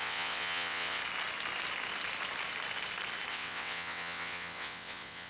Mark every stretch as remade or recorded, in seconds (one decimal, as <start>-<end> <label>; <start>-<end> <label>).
0.0-1.0 remade; 1.0-3.3 recorded; 3.3-5.3 remade